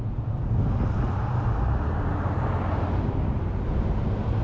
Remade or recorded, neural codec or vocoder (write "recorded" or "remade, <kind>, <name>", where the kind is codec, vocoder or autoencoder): recorded